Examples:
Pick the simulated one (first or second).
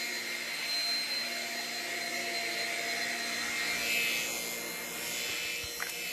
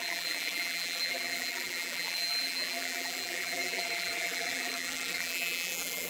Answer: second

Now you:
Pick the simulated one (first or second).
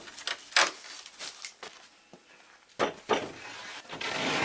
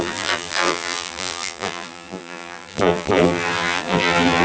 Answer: second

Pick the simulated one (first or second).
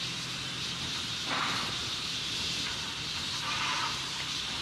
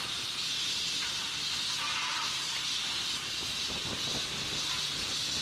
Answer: first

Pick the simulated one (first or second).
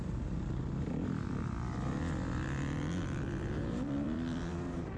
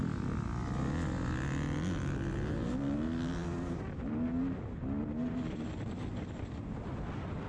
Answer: first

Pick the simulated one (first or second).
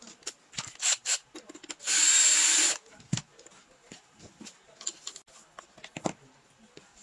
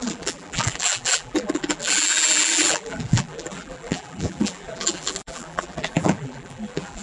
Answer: second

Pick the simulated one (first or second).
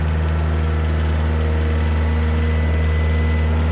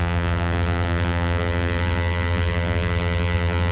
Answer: second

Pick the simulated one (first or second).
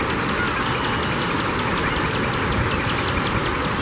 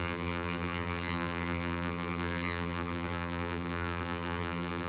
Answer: second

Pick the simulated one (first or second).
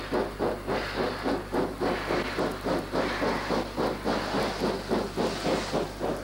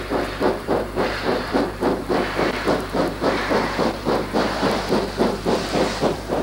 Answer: second